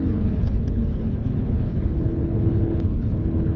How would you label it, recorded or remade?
remade